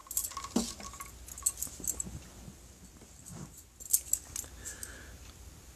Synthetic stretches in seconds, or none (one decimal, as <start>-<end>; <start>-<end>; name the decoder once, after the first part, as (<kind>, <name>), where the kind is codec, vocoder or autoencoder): none